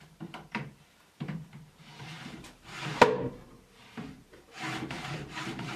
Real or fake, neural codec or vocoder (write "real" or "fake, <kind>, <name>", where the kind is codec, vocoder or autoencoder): fake, vocoder, BigVGAN v2